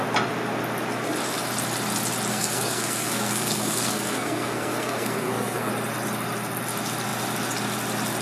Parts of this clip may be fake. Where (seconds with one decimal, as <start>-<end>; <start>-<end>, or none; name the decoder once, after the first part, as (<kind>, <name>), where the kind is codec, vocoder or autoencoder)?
2.3-5.7 (codec, SNAC)